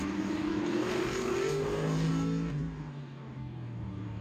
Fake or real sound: fake